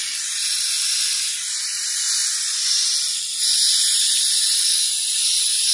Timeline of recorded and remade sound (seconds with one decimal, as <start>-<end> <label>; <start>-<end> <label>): 0.0-2.2 recorded; 2.2-2.9 remade; 2.9-5.7 recorded

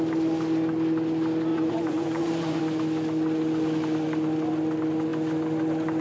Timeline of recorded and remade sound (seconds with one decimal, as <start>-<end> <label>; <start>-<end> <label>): 0.0-1.5 recorded; 1.5-2.6 remade; 2.6-6.0 recorded

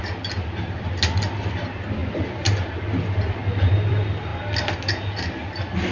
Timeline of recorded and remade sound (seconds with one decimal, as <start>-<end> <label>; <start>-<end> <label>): 0.0-5.9 recorded

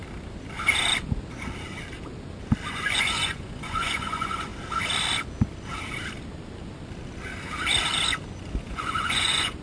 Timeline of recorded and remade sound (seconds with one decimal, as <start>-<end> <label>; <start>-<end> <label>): 0.0-2.7 recorded; 2.7-4.5 remade; 4.5-8.6 recorded; 8.6-9.6 remade

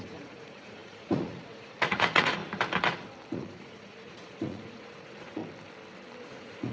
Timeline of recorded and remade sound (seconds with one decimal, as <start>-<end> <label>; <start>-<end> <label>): 0.0-2.4 remade; 2.4-3.3 recorded; 3.3-5.4 remade; 5.4-6.2 recorded; 6.2-6.7 remade

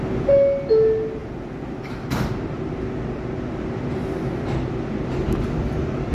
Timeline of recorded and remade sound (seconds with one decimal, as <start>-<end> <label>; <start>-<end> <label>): 0.0-6.1 recorded

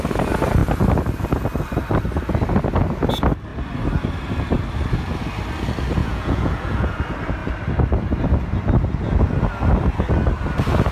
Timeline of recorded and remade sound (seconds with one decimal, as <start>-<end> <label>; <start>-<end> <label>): 0.0-6.0 recorded; 6.0-7.0 remade; 7.0-10.9 recorded